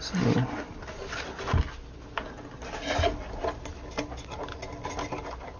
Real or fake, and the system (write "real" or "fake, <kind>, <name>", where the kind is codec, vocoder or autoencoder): real